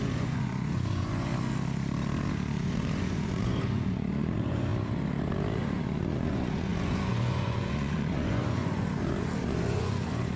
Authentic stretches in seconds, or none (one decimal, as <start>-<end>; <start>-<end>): 1.3-2.6; 4.7-5.6